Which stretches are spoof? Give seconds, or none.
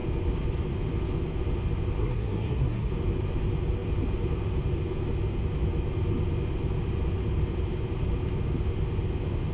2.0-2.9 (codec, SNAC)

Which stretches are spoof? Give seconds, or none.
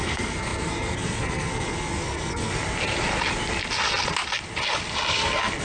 0.0-2.5 (codec, SNAC); 5.1-5.6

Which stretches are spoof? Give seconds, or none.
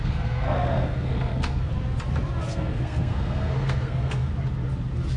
0.0-1.7 (codec, SNAC); 2.5-4.3